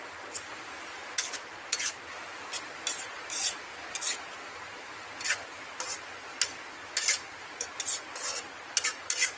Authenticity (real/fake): real